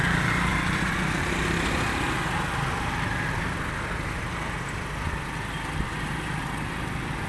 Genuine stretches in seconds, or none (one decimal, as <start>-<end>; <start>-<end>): 0.0-7.3